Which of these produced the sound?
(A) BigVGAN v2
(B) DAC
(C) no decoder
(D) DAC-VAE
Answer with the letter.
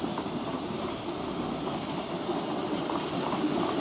C